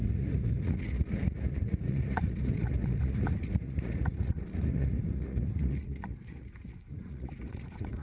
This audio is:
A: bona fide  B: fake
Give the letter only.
B